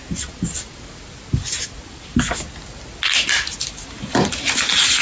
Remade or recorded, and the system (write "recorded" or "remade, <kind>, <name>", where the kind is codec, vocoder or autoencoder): recorded